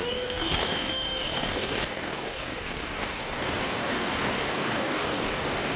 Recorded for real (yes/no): no